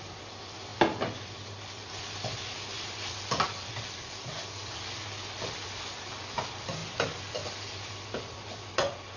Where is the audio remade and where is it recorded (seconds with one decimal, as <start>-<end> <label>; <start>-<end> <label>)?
0.0-9.2 recorded